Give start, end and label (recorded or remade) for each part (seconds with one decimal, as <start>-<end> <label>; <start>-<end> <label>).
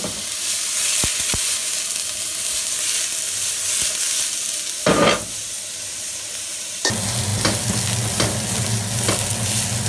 0.0-1.1 recorded; 1.1-1.7 remade; 1.7-9.9 recorded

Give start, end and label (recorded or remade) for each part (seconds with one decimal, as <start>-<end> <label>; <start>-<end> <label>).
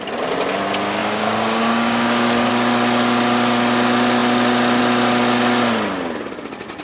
0.0-1.0 recorded; 1.0-2.5 remade; 2.5-6.8 recorded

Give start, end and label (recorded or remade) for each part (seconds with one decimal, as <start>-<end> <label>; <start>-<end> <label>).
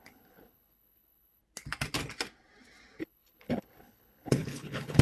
0.0-1.4 remade; 1.4-3.0 recorded; 3.0-5.0 remade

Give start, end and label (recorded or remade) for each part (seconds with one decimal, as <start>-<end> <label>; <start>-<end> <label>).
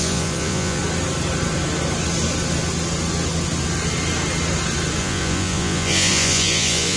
0.0-0.8 remade; 0.8-5.0 recorded; 5.0-7.0 remade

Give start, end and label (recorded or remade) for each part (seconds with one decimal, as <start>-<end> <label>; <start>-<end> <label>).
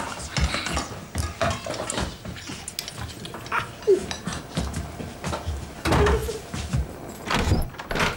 0.0-4.0 recorded; 4.0-5.0 remade; 5.0-6.2 recorded; 6.2-6.7 remade; 6.7-8.2 recorded